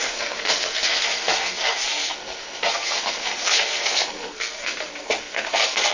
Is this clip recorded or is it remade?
remade